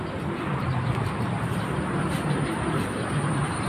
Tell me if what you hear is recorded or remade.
remade